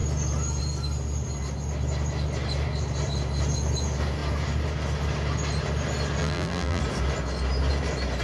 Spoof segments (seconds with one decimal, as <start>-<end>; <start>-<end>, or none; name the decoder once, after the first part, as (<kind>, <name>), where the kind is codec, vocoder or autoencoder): 6.2-6.8 (vocoder, BigVGAN v2)